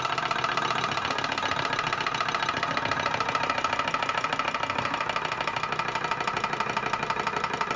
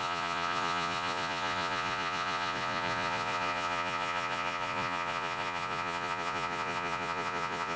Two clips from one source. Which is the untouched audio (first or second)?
first